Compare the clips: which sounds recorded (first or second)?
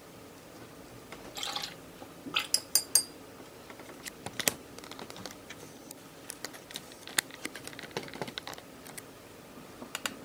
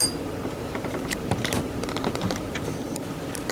first